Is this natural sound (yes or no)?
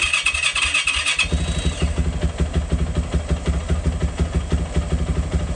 yes